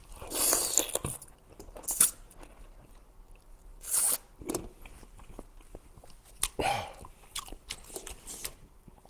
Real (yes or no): yes